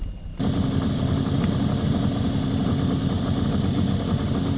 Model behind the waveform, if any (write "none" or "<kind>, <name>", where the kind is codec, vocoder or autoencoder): none